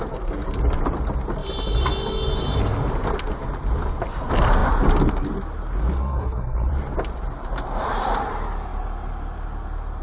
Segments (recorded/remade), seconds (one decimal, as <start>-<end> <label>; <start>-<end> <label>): 0.0-6.0 recorded; 6.0-6.7 remade; 6.7-10.0 recorded